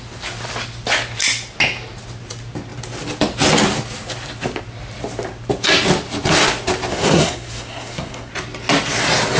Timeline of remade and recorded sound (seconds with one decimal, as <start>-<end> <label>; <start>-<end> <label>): 0.0-6.9 recorded; 6.9-8.3 remade; 8.3-9.4 recorded